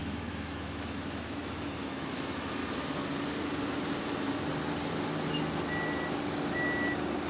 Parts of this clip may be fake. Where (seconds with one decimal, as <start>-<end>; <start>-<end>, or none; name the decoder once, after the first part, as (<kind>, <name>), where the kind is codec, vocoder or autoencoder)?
0.0-2.6 (autoencoder, DAC-VAE)